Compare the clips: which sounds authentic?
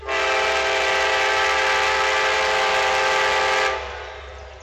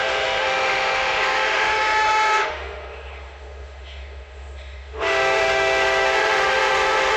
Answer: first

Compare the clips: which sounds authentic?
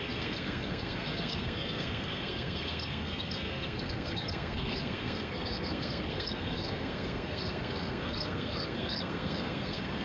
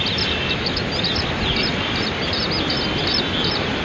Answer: second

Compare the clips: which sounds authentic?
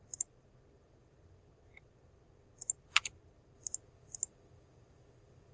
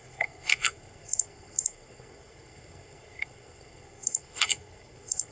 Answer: first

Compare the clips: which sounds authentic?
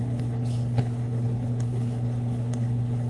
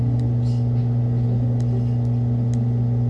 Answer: second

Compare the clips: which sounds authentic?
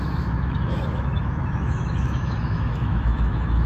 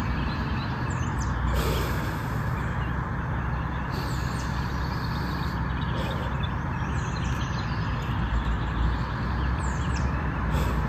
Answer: second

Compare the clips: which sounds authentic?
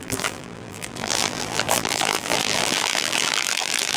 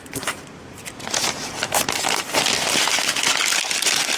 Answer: second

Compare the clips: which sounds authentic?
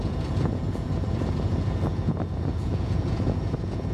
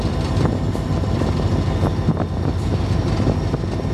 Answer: second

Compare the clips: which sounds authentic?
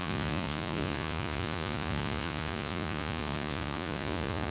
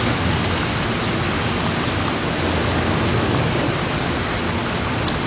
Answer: second